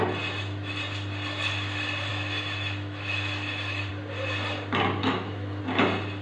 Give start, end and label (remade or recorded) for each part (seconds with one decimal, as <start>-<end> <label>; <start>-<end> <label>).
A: 0.0-2.1 recorded; 2.1-3.9 remade; 3.9-5.0 recorded; 5.0-5.6 remade; 5.6-6.2 recorded

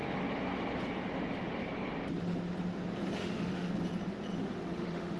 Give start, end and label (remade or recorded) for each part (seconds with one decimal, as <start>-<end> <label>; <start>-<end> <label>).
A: 0.0-3.2 recorded; 3.2-3.7 remade; 3.7-4.4 recorded; 4.4-5.2 remade

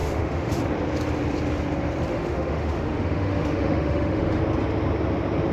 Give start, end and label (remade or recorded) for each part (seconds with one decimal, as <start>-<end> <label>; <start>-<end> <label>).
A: 0.0-0.6 remade; 0.6-2.1 recorded; 2.1-4.4 remade; 4.4-5.5 recorded

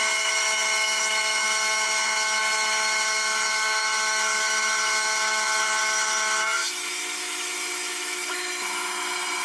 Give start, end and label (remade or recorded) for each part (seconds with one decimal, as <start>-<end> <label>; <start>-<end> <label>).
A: 0.0-9.4 remade

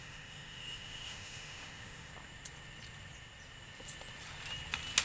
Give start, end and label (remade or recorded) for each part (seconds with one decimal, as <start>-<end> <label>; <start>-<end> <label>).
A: 0.0-2.1 remade; 2.1-5.0 recorded

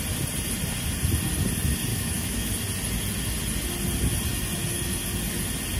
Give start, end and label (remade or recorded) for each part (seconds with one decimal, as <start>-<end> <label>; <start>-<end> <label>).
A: 0.0-1.9 recorded; 1.9-2.5 remade; 2.5-5.8 recorded

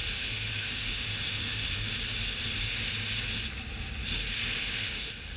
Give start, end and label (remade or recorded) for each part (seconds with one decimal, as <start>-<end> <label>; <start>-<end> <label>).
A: 0.0-1.9 remade; 1.9-4.6 recorded; 4.6-5.4 remade

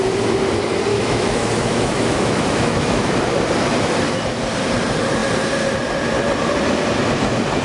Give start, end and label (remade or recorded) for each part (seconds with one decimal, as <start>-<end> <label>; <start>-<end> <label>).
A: 0.0-0.9 recorded; 0.9-3.2 remade; 3.2-7.6 recorded